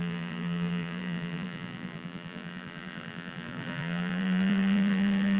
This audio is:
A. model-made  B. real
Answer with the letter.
A